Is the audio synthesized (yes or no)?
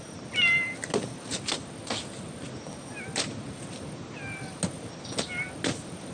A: no